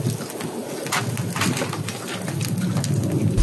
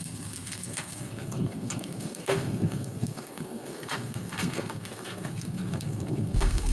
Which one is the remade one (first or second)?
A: second